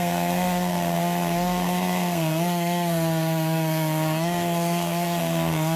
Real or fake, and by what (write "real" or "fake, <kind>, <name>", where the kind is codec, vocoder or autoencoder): fake, codec, SNAC